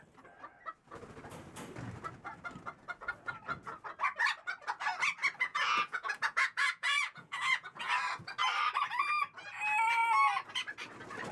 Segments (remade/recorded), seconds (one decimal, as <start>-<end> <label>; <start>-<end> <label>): 0.0-5.5 recorded; 5.5-7.9 remade; 7.9-11.3 recorded